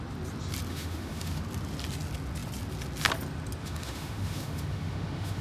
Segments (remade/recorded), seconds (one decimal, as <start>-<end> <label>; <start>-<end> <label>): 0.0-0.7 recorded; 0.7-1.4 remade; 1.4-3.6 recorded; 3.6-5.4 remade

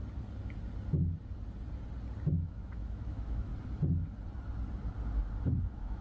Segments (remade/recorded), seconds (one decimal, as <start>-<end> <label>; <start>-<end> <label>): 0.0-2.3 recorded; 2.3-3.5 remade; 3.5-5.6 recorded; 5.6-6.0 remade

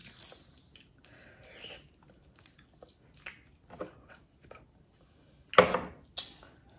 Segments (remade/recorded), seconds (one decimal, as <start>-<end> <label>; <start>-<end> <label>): 0.0-6.8 recorded